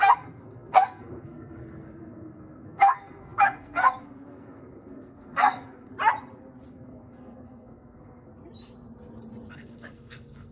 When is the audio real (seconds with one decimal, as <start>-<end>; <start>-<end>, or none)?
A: 5.9-6.7; 8.3-9.5